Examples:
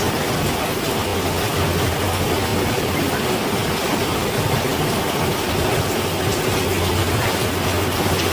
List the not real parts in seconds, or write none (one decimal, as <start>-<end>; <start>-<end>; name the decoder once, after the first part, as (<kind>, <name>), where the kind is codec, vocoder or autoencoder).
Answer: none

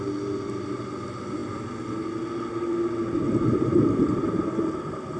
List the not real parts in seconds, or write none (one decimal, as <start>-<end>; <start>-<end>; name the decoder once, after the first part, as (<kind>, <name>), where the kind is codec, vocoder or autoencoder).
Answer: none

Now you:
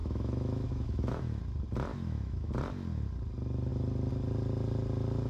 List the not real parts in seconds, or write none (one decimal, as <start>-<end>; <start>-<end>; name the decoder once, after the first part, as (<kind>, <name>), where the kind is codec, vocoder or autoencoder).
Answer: 0.0-1.4 (autoencoder, DAC-VAE); 1.9-2.5